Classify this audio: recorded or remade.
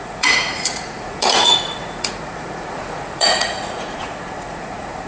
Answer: remade